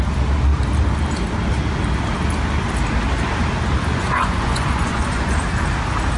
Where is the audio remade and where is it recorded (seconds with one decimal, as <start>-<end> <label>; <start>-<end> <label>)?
0.0-3.9 recorded; 3.9-5.3 remade; 5.3-6.2 recorded